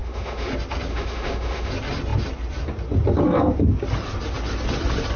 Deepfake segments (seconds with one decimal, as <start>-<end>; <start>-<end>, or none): 0.0-0.5; 0.9-1.7